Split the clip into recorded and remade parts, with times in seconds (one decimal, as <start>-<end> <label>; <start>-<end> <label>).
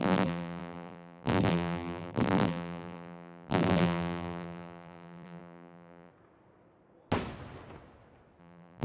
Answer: 0.0-6.1 remade; 6.1-8.4 recorded; 8.4-8.8 remade